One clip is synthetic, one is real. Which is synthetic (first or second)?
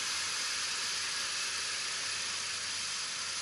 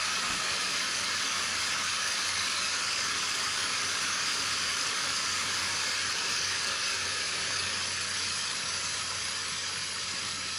second